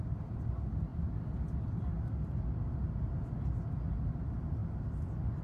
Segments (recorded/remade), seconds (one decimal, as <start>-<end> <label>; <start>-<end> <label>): 0.0-5.4 recorded